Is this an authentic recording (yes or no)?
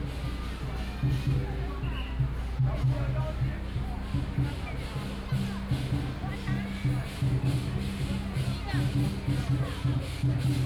yes